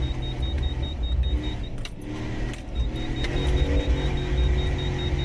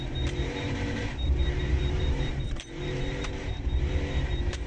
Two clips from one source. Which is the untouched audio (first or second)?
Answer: first